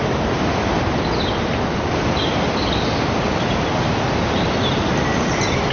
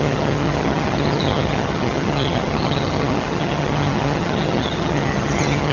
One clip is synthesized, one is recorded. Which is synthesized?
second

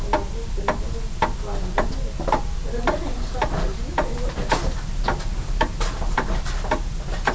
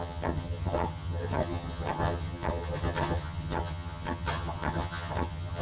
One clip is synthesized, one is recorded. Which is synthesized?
second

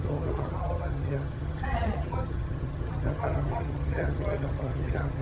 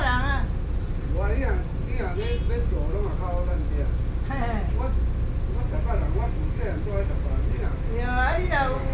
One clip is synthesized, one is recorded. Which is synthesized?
first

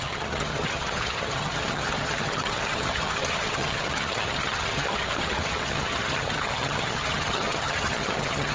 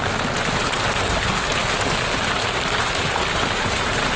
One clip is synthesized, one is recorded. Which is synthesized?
first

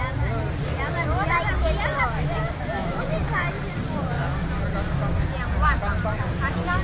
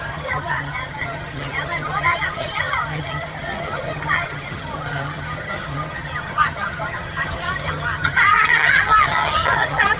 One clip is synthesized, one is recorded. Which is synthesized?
second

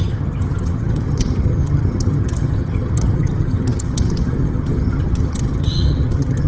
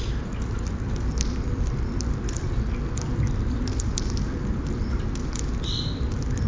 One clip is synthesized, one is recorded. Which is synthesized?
first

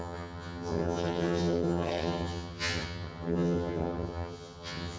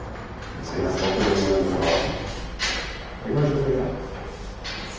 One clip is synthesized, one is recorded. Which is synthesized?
first